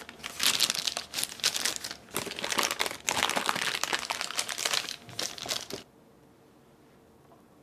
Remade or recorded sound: recorded